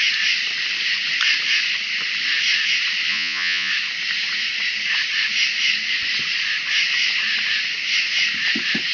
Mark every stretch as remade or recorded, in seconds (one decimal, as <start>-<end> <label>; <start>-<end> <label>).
0.0-3.1 recorded; 3.1-3.7 remade; 3.7-8.9 recorded